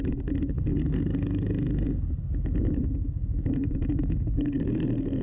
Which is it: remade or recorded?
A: remade